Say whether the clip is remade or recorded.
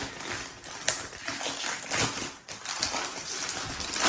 recorded